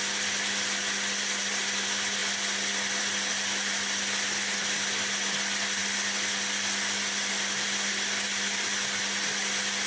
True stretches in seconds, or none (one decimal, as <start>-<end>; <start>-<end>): 0.0-9.9